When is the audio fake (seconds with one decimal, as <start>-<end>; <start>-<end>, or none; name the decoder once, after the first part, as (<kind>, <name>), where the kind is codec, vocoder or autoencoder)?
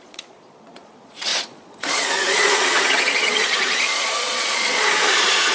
0.0-5.5 (vocoder, Vocos)